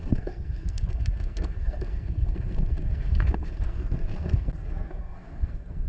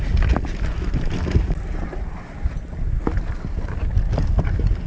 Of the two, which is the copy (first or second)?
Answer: first